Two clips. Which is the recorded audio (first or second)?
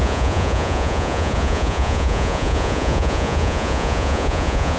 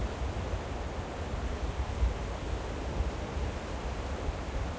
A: second